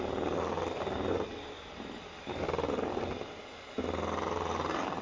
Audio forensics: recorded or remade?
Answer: recorded